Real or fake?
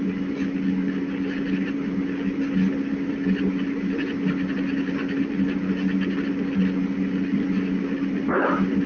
real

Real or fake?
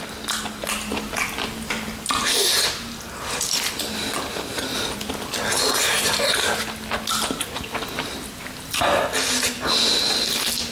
real